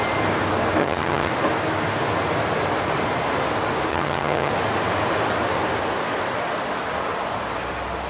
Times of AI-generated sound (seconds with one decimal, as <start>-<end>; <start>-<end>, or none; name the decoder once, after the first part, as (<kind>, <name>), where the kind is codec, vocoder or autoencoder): 0.8-1.3 (vocoder, HiFi-GAN); 3.9-4.5